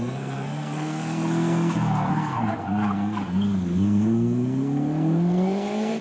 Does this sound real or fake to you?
fake